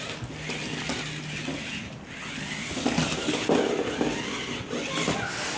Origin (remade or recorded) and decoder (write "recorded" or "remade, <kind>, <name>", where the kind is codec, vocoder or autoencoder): recorded